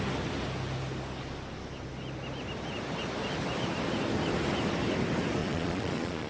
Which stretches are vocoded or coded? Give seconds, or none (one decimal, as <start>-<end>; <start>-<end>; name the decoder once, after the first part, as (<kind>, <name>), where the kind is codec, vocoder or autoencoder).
5.4-6.3 (vocoder, Vocos)